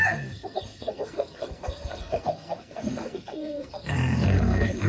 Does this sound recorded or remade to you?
remade